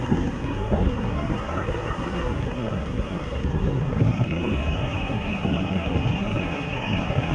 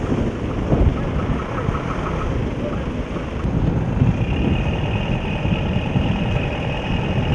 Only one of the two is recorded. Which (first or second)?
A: second